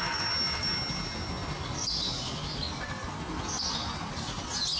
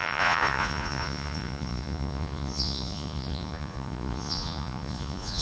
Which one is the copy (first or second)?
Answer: second